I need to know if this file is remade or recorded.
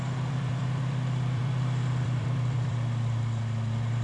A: remade